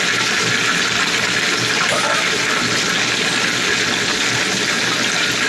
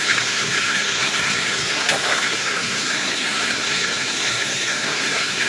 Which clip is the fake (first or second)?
second